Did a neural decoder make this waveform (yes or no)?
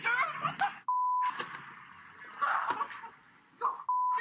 no